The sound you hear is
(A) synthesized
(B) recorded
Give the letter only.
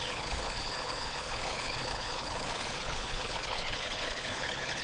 A